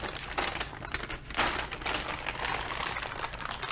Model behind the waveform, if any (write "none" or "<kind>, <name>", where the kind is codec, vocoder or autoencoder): none